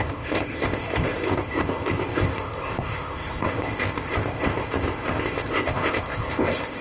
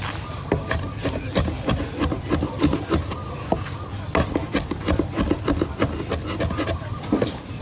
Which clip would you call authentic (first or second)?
second